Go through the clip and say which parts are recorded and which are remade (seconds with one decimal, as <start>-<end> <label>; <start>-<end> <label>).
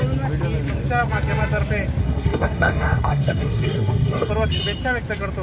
0.0-2.0 recorded; 2.0-4.3 remade; 4.3-5.4 recorded